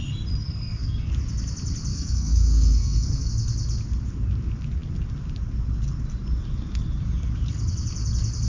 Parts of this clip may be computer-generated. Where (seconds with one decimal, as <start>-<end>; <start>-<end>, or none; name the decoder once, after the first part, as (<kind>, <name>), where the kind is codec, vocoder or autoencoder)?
0.4-1.1 (codec, SNAC); 1.9-3.3